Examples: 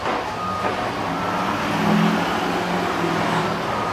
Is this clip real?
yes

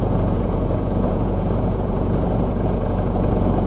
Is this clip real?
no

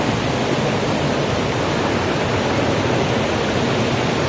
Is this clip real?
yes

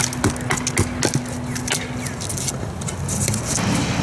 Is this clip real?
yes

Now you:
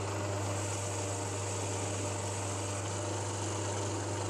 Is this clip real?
yes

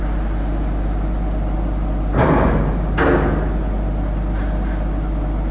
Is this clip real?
yes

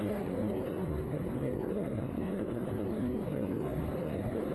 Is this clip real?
no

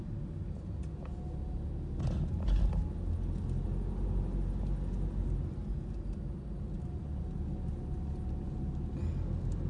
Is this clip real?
yes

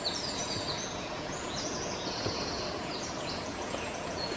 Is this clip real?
no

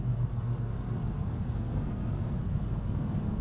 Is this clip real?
no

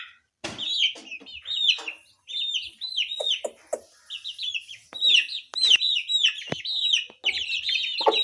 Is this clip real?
yes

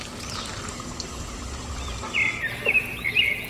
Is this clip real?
yes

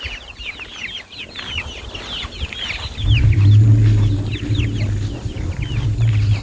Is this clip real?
yes